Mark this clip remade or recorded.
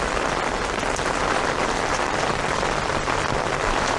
recorded